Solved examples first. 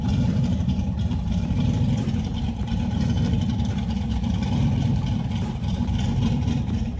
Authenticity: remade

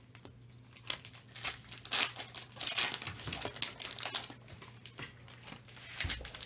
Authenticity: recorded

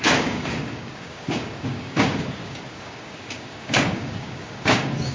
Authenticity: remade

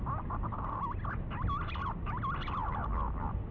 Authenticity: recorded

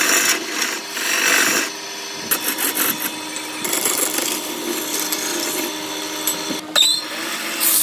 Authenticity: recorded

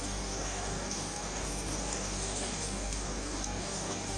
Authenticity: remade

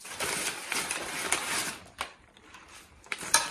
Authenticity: remade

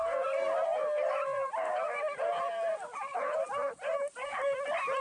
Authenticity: recorded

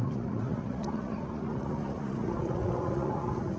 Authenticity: remade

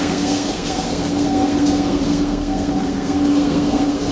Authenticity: remade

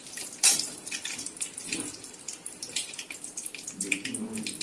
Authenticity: remade